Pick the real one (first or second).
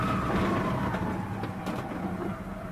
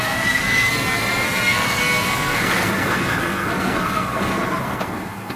first